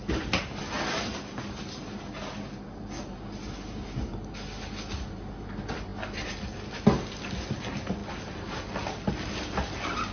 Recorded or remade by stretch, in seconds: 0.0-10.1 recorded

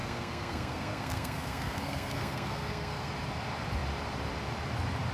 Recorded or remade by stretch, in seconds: 0.0-3.1 remade; 3.1-5.1 recorded

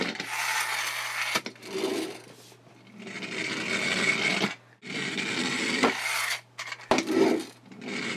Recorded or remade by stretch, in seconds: 0.0-8.2 recorded

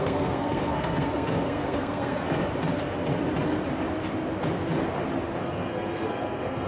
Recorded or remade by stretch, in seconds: 0.0-2.4 remade; 2.4-5.4 recorded; 5.4-6.7 remade

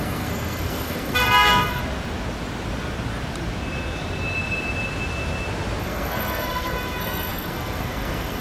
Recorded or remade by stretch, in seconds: 0.0-1.8 remade; 1.8-5.8 recorded; 5.8-8.4 remade

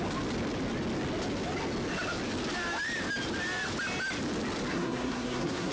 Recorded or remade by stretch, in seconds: 0.0-4.7 recorded; 4.7-5.7 remade

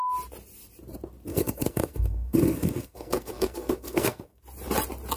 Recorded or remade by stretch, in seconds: 0.0-1.3 recorded; 1.3-4.4 remade; 4.4-5.2 recorded